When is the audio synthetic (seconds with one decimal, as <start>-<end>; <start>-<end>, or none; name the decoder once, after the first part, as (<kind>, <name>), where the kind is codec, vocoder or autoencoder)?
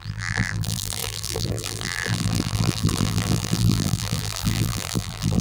0.0-5.4 (vocoder, BigVGAN v2)